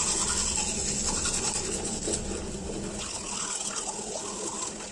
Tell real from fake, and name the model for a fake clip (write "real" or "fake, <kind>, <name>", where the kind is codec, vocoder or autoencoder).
real